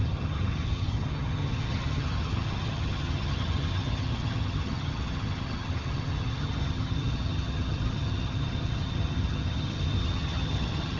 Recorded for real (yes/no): no